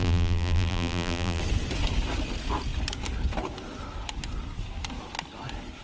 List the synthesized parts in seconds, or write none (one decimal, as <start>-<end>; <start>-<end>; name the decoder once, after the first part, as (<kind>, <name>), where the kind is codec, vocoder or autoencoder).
0.0-1.4 (vocoder, BigVGAN v2)